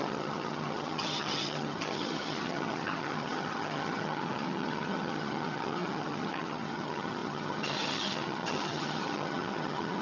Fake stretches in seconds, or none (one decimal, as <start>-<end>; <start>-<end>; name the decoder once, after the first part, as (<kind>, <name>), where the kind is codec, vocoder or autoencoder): 0.0-10.0 (vocoder, HiFi-GAN)